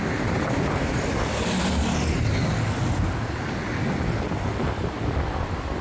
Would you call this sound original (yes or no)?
yes